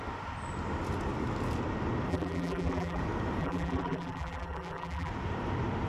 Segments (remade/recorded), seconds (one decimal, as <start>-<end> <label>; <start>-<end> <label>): 0.0-2.1 recorded; 2.1-3.0 remade; 3.0-3.4 recorded; 3.4-5.1 remade; 5.1-5.9 recorded